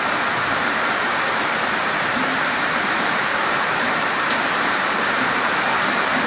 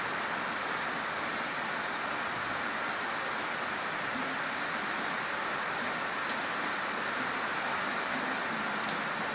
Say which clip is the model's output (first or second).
first